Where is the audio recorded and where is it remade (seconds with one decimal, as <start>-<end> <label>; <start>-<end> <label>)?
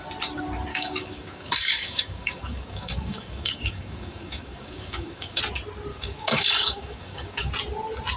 0.0-0.7 recorded; 0.7-5.4 remade; 5.4-5.9 recorded; 5.9-7.5 remade; 7.5-8.2 recorded